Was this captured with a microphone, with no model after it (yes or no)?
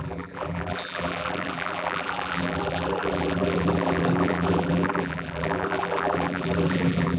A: no